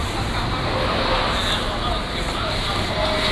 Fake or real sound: real